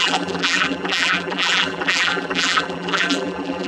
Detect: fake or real fake